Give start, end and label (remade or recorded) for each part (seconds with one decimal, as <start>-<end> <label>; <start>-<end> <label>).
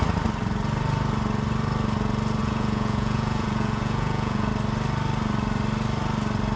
0.0-2.4 recorded; 2.4-4.5 remade; 4.5-6.6 recorded